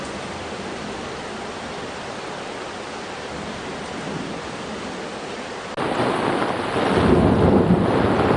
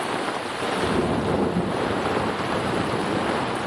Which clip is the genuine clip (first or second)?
first